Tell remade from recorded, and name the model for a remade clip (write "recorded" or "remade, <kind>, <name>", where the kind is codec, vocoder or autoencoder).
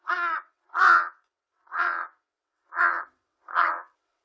remade, vocoder, WaveNeXt